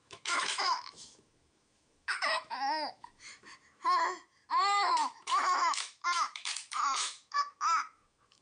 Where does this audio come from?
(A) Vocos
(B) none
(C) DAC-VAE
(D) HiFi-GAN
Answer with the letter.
C